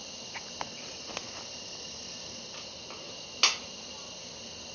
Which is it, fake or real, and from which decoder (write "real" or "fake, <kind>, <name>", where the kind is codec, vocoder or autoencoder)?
real